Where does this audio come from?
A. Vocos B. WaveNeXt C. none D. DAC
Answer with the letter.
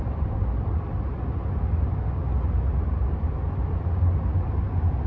C